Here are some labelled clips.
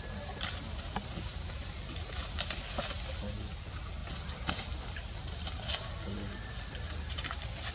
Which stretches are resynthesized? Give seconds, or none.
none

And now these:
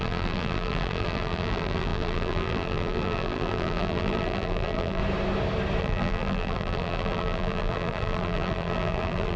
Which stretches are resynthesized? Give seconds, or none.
0.0-5.0 (vocoder, BigVGAN v2); 5.8-9.4

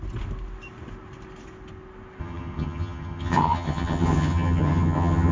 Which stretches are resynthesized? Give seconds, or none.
2.2-5.3 (vocoder, HiFi-GAN)

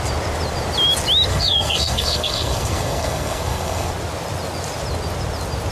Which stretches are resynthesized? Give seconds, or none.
1.3-3.9 (codec, SNAC)